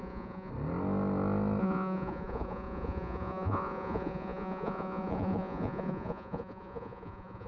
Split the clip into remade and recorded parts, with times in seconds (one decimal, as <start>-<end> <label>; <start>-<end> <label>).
0.0-0.5 remade; 0.5-1.6 recorded; 1.6-7.5 remade